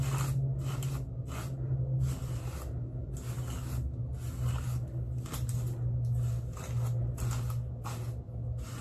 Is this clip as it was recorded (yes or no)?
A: yes